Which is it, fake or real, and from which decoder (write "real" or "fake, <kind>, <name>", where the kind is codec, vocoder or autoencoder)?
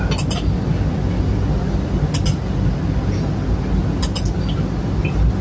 real